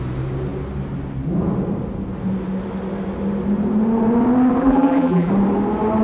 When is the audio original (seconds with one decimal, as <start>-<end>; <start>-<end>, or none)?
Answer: 0.0-4.6; 5.3-6.0